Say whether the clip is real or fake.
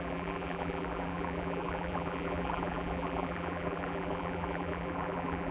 fake